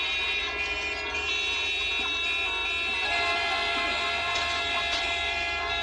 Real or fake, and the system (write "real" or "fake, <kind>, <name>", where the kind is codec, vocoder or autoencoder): real